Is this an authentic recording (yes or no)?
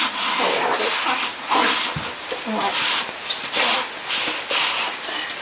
yes